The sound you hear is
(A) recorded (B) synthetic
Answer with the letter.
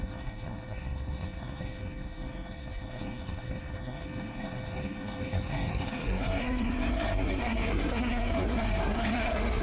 B